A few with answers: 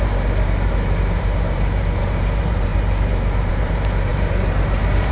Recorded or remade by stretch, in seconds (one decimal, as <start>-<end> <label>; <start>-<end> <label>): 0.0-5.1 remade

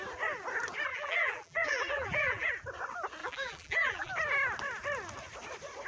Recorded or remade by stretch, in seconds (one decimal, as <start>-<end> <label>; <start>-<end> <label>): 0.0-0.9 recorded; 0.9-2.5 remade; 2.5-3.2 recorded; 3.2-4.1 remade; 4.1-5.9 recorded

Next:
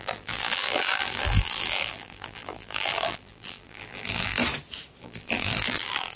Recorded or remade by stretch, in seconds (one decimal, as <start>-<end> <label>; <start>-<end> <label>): 0.0-4.4 remade; 4.4-5.0 recorded; 5.0-6.2 remade